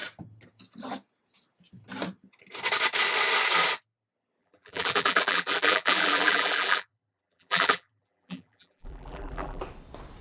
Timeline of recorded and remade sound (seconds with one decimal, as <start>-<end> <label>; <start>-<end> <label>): 0.0-4.4 recorded; 4.4-9.6 remade; 9.6-10.2 recorded